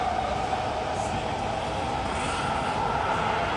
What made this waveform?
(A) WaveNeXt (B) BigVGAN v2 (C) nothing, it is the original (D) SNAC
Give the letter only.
C